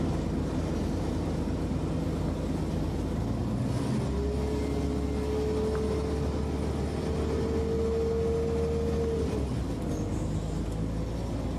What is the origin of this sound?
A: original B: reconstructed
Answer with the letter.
A